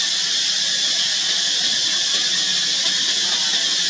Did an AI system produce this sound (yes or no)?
no